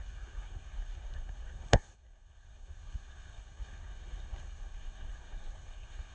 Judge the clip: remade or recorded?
remade